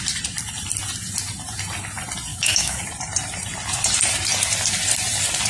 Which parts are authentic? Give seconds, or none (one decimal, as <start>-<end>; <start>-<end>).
0.0-2.3; 2.8-5.5